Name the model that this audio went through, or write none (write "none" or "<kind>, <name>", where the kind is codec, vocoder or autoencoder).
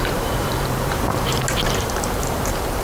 vocoder, BigVGAN v2